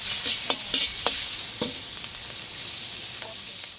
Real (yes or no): no